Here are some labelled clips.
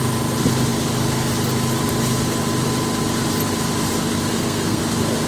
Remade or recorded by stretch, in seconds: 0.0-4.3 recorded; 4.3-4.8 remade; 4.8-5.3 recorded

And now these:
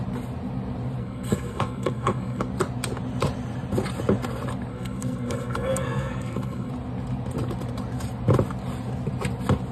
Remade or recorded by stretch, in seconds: 0.0-1.0 recorded; 1.0-2.5 remade; 2.5-4.7 recorded; 4.7-6.7 remade; 6.7-9.7 recorded

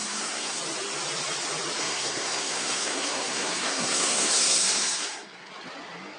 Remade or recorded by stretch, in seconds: 0.0-0.6 remade; 0.6-1.8 recorded; 1.8-5.5 remade; 5.5-6.2 recorded

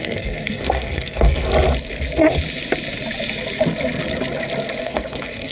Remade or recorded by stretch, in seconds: 0.0-1.5 remade; 1.5-4.8 recorded; 4.8-5.5 remade

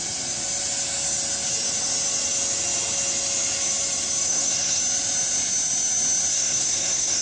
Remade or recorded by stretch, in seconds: 0.0-4.2 recorded; 4.2-4.8 remade; 4.8-6.3 recorded; 6.3-7.2 remade

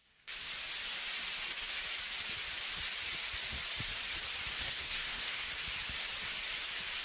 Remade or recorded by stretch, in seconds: 0.0-0.5 remade; 0.5-4.6 recorded; 4.6-5.5 remade; 5.5-7.0 recorded

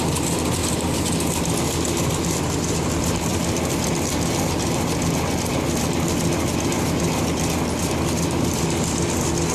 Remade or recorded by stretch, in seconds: 0.0-9.5 recorded